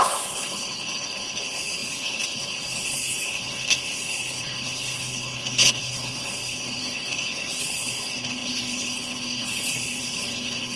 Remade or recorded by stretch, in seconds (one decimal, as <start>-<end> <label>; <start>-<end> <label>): 0.0-10.8 remade